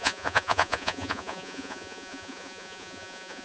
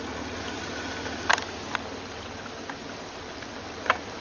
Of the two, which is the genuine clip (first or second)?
second